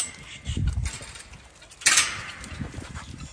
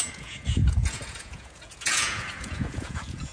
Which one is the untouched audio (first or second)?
first